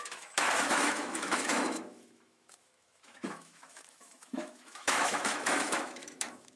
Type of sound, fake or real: fake